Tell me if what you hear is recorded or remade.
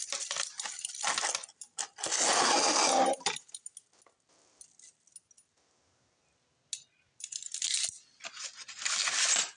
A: recorded